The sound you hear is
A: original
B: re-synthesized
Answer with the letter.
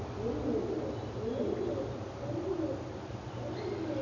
A